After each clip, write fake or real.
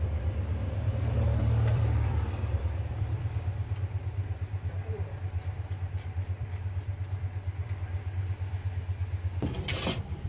fake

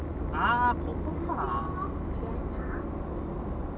real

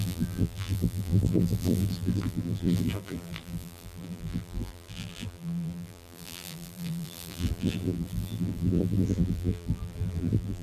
fake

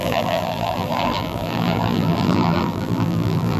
fake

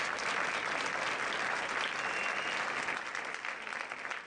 real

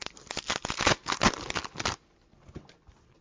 real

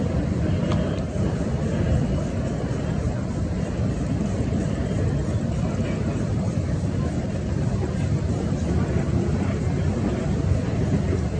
fake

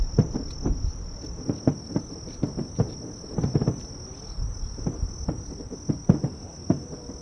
fake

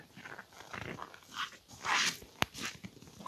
real